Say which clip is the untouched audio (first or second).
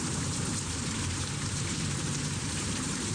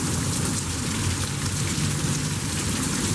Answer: second